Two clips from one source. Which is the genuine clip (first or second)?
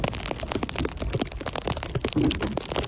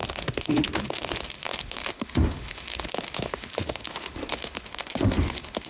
first